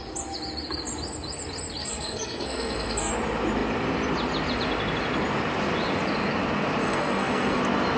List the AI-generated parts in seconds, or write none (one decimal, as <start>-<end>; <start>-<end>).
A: 1.8-3.1; 6.8-7.6

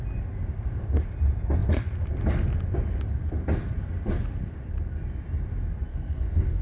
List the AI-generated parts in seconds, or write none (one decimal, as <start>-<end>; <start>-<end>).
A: 5.9-6.6

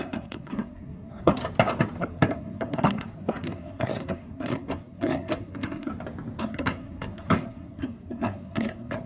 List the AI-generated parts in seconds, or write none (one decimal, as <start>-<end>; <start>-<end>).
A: 0.0-1.4; 2.0-5.9; 6.4-9.1

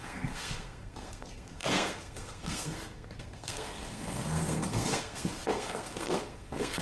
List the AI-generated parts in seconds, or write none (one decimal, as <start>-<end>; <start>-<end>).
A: 0.0-6.8

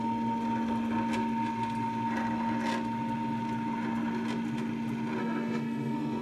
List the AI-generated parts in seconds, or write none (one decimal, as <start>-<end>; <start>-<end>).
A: 5.2-6.2

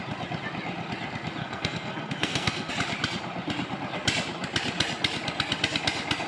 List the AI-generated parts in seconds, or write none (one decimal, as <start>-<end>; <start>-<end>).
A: 1.4-2.7